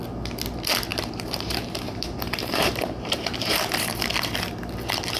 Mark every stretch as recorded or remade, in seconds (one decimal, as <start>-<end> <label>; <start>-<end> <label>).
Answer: 0.0-0.9 recorded; 0.9-4.0 remade; 4.0-5.2 recorded